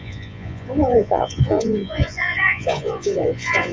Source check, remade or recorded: remade